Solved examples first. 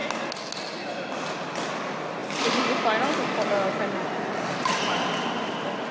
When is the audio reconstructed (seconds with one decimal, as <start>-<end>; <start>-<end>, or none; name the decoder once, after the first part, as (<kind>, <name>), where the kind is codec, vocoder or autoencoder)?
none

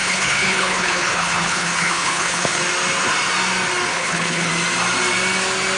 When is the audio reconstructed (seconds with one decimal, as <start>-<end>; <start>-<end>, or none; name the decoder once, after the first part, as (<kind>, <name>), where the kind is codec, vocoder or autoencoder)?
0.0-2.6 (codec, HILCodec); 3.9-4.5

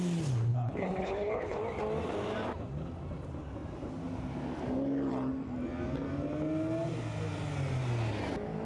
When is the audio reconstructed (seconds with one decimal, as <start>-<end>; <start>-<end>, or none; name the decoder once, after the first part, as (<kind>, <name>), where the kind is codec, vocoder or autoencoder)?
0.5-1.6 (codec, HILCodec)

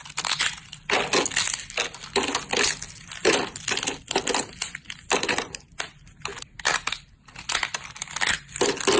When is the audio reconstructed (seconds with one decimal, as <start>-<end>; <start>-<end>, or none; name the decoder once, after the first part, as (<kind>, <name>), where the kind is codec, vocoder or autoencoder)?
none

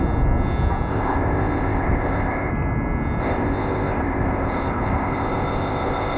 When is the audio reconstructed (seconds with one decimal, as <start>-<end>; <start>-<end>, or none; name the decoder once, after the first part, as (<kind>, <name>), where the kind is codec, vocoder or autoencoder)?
0.9-2.5 (codec, ZipCodec); 3.2-6.2

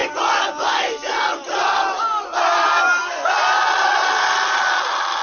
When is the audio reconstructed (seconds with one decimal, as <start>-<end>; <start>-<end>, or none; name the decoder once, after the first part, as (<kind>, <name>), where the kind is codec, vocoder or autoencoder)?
none